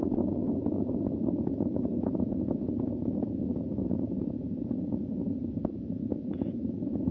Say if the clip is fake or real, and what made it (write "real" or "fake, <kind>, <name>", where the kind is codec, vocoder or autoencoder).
fake, vocoder, Vocos